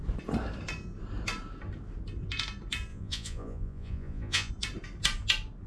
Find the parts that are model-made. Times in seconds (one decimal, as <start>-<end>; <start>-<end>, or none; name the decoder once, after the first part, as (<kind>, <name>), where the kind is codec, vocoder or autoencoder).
2.9-4.5 (vocoder, Vocos)